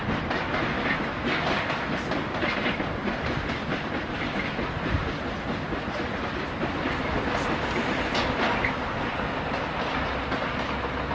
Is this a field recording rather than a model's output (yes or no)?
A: yes